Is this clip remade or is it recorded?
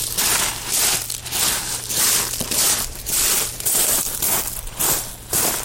recorded